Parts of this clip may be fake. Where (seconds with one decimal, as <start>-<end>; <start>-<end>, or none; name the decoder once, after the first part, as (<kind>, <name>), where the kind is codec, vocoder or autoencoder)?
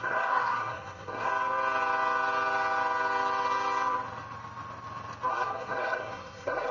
0.0-1.3 (codec, SNAC); 5.3-6.7